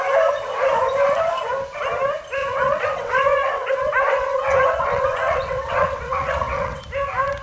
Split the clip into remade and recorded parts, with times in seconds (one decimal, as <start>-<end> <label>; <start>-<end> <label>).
0.0-2.4 recorded; 2.4-6.8 remade; 6.8-7.4 recorded